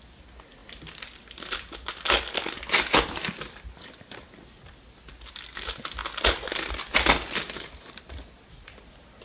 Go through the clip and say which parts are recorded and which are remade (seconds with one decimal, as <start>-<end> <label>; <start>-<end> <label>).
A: 0.0-9.2 recorded